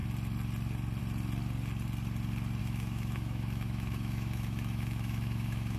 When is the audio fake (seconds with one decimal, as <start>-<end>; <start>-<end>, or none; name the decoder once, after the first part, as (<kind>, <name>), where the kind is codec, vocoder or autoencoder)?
2.6-5.8 (autoencoder, DAC-VAE)